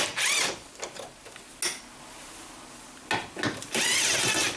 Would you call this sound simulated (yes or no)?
no